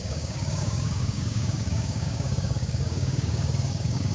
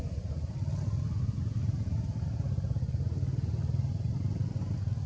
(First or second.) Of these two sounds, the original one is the second